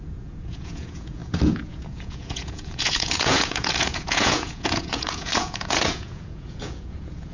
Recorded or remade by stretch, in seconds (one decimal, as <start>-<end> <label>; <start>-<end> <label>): 0.0-7.3 remade